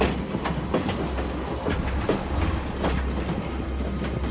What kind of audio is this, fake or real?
real